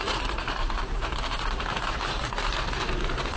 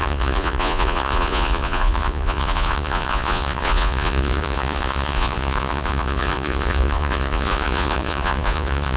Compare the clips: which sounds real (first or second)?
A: first